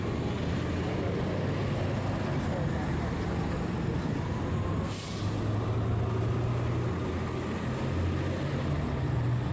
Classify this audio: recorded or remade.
recorded